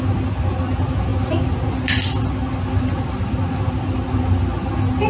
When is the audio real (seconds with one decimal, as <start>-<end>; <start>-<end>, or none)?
0.0-5.1